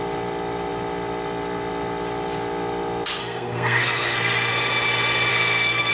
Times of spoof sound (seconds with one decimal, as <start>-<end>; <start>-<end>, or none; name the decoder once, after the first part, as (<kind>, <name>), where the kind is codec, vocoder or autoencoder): 3.2-4.5 (codec, SNAC); 5.3-5.9